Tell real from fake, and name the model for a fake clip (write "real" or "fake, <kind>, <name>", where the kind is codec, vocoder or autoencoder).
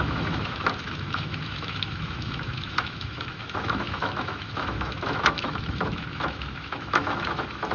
fake, autoencoder, DAC-VAE